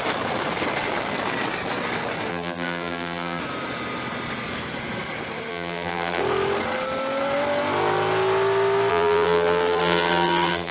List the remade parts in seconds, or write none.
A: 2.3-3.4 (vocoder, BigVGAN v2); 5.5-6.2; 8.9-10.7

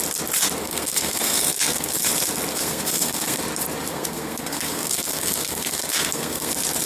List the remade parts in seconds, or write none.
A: 0.6-2.0 (codec, SNAC); 2.5-3.4; 3.9-6.5

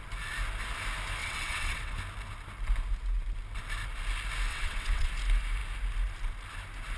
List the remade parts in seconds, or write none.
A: 1.2-2.0 (vocoder, WaveNeXt); 4.5-5.1

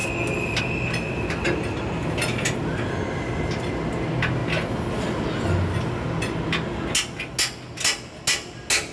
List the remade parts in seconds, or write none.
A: none

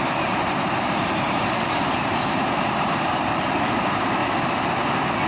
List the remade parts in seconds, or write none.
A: 0.0-4.2 (vocoder, BigVGAN v2)

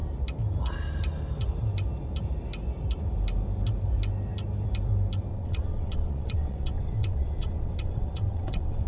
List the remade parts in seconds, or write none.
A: 5.3-8.9 (vocoder, WaveNeXt)

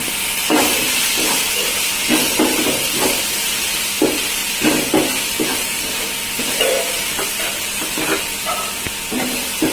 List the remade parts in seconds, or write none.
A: none

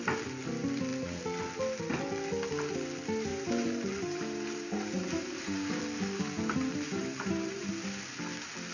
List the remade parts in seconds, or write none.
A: 3.3-5.8 (vocoder, BigVGAN v2); 7.0-7.7